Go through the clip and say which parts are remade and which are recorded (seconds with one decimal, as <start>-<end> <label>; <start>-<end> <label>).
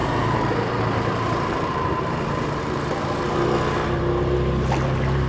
0.0-3.2 remade; 3.2-5.3 recorded